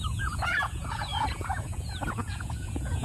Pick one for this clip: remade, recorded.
remade